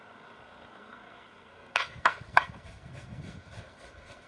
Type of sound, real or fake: fake